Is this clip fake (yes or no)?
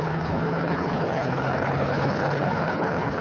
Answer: yes